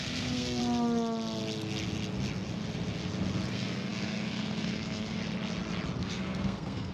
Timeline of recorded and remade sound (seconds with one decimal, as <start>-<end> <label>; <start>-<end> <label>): 0.0-0.6 remade; 0.6-3.5 recorded; 3.5-5.2 remade; 5.2-6.0 recorded; 6.0-6.9 remade